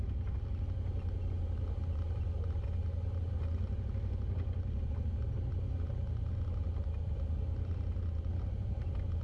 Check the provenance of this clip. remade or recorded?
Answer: recorded